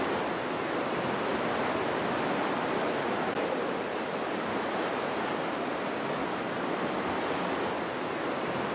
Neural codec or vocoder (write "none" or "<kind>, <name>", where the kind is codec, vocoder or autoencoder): none